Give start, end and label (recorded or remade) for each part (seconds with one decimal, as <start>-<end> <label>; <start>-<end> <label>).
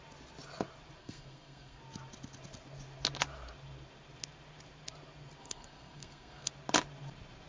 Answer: 0.0-1.0 recorded; 1.0-1.8 remade; 1.8-5.4 recorded; 5.4-6.5 remade; 6.5-7.5 recorded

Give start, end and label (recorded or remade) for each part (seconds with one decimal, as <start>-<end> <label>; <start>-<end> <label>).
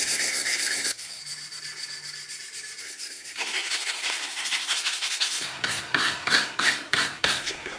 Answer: 0.0-1.2 remade; 1.2-2.8 recorded; 2.8-7.8 remade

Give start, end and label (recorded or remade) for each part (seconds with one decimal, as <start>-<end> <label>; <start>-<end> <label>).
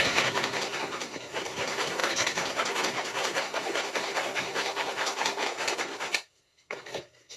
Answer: 0.0-7.4 remade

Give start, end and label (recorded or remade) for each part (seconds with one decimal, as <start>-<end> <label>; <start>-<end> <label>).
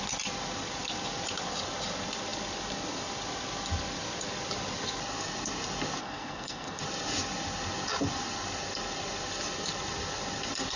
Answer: 0.0-6.0 recorded; 6.0-6.8 remade; 6.8-10.8 recorded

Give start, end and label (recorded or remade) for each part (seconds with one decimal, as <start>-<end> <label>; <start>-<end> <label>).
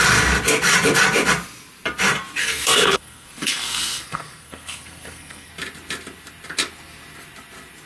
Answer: 0.0-2.4 recorded; 2.4-5.5 remade; 5.5-7.9 recorded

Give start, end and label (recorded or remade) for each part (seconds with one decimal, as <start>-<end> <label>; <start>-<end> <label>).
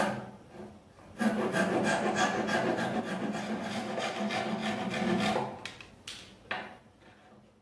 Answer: 0.0-7.6 recorded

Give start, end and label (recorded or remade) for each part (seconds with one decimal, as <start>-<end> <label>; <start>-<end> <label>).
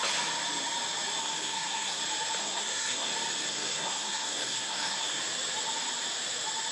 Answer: 0.0-1.2 recorded; 1.2-2.0 remade; 2.0-2.4 recorded; 2.4-3.1 remade; 3.1-3.5 recorded; 3.5-5.2 remade; 5.2-6.7 recorded